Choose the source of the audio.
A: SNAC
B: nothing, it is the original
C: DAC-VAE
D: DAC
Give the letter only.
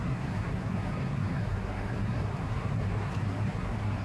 A